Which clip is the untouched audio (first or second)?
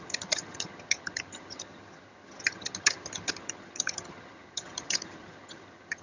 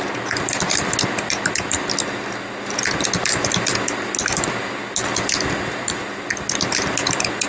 second